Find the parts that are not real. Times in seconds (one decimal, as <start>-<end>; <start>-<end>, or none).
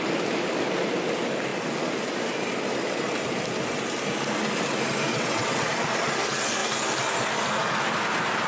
5.1-5.7